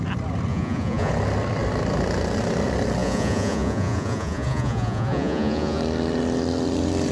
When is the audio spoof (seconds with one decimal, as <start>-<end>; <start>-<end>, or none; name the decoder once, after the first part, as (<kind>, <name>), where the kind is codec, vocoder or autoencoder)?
0.5-1.1 (vocoder, Vocos); 3.0-5.8